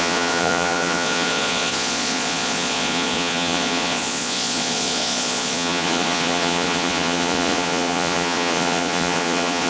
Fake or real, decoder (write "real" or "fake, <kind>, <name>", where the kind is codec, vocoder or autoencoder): fake, vocoder, Vocos